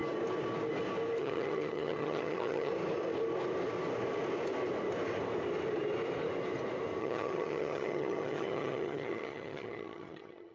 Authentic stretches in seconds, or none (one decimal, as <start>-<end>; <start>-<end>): 0.0-1.2; 2.7-7.0